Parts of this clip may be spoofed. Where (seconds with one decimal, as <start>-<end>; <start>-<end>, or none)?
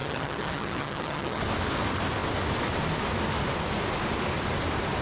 0.0-1.4